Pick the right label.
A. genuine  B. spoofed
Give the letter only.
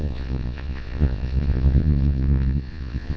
B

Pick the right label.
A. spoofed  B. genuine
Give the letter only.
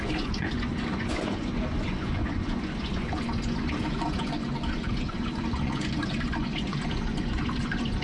A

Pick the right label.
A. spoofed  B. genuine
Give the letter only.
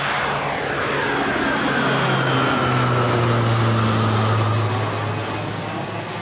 B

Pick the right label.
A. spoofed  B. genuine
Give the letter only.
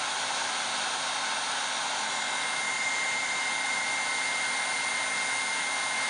B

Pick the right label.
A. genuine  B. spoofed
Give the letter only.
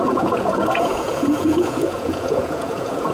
B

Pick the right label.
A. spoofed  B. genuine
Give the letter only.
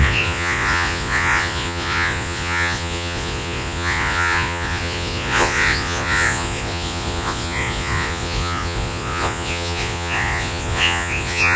A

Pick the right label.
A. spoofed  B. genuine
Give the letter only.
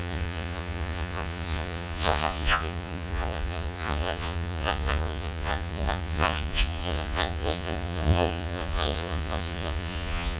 A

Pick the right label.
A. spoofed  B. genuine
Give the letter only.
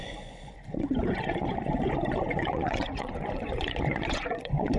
A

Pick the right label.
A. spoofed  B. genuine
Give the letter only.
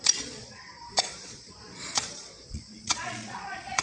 A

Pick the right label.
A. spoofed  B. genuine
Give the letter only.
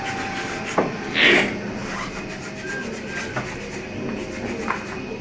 B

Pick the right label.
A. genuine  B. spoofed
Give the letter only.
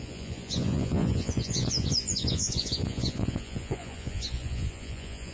B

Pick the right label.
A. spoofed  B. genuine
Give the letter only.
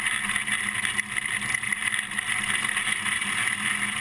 B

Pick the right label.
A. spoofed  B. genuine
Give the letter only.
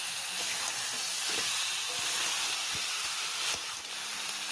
B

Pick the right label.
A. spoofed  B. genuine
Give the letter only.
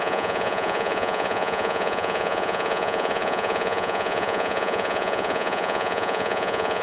A